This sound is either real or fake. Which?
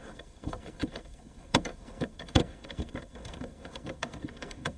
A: fake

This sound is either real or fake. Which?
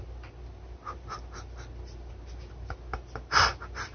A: real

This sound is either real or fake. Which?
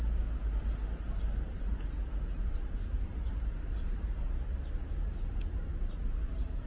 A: real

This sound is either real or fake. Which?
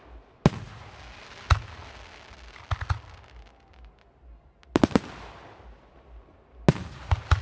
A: real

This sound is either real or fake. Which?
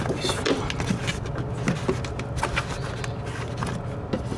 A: real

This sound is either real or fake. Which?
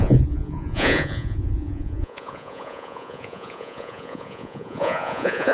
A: fake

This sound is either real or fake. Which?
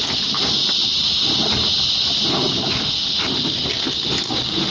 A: real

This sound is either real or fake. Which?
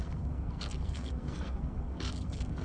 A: fake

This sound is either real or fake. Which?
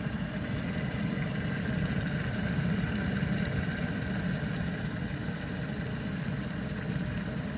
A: real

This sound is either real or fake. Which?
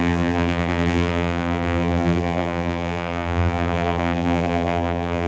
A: fake